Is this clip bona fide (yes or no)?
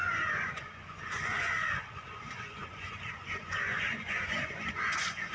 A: no